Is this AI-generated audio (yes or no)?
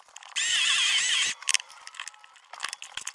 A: no